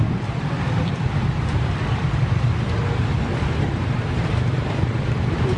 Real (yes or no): no